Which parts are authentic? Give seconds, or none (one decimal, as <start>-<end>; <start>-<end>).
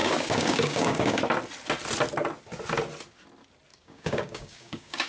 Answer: 1.2-3.7